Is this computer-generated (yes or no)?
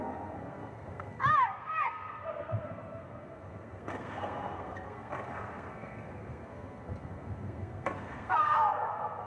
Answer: yes